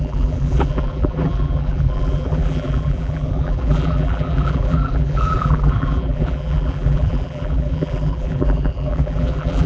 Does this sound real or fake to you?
fake